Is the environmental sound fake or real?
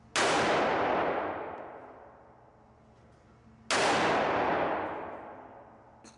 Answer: real